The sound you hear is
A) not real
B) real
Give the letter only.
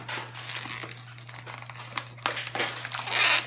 B